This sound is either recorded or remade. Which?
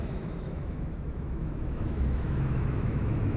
remade